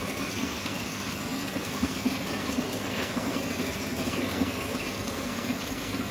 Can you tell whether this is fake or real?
fake